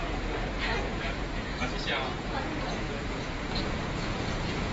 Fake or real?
fake